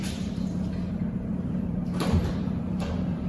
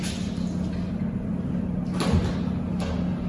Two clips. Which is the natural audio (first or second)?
second